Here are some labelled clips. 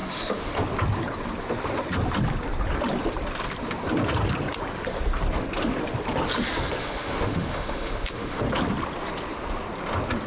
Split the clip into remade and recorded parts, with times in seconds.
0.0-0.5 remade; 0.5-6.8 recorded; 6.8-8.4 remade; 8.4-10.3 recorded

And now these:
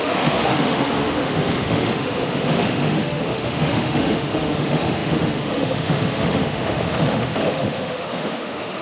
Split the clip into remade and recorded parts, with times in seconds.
0.0-8.8 remade

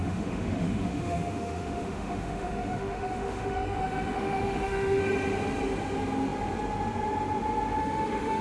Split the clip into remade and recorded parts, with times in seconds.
0.0-5.0 remade; 5.0-7.8 recorded; 7.8-8.4 remade